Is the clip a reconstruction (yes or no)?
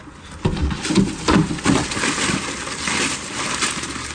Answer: no